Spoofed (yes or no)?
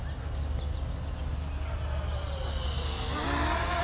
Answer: no